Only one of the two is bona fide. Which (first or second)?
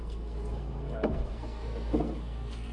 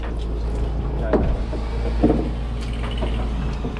second